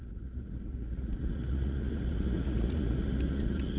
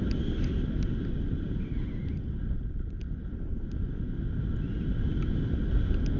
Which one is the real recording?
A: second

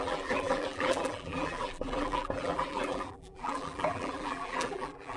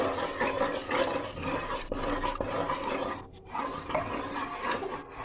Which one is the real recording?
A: second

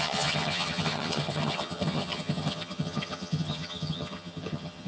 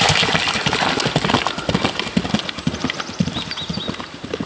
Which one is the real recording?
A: second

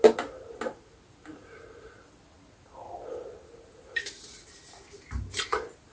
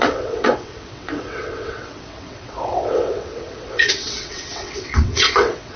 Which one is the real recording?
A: first